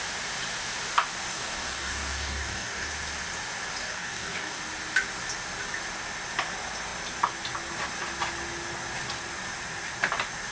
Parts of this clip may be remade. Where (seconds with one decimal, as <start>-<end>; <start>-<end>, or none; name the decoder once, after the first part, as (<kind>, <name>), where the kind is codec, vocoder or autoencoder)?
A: 1.3-2.9 (codec, DAC); 3.8-4.6